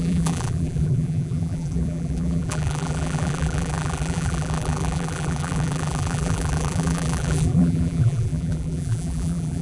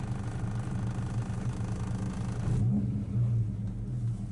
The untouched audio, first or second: second